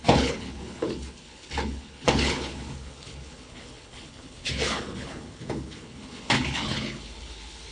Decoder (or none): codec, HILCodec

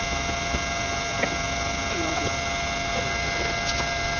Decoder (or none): none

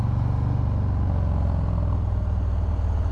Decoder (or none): none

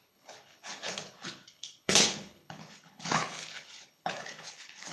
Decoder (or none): codec, HILCodec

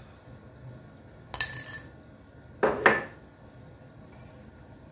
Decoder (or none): none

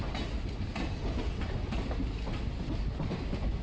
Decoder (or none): none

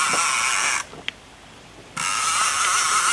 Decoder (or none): none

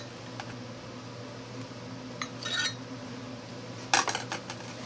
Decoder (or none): none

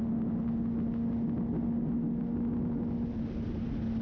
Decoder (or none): none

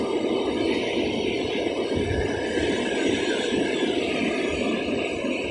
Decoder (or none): none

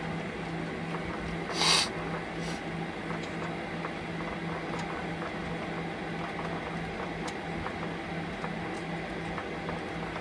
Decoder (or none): none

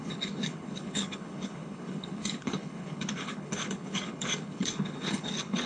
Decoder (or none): codec, HILCodec